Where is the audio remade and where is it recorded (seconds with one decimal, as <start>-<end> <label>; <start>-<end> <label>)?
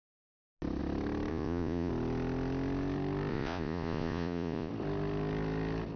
0.0-1.3 recorded; 1.3-1.9 remade; 1.9-3.3 recorded; 3.3-4.7 remade; 4.7-6.0 recorded